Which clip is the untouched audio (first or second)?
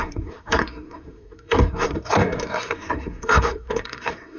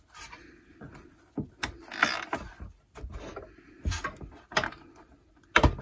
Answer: second